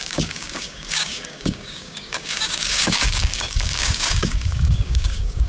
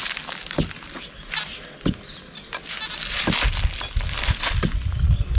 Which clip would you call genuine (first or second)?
second